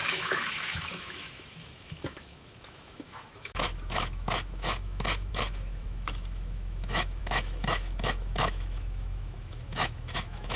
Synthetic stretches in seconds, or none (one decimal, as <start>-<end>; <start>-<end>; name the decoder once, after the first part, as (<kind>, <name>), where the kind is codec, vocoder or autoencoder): 0.0-10.6 (autoencoder, DAC-VAE)